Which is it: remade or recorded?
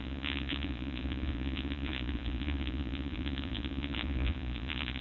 remade